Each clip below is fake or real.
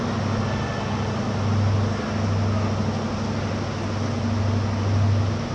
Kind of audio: real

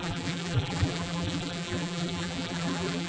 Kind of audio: fake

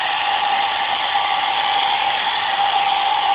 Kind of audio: fake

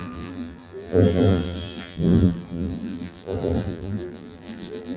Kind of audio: fake